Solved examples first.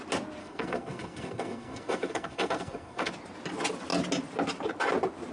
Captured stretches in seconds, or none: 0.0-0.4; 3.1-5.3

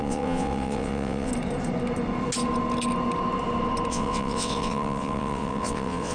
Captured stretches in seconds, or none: 1.3-3.9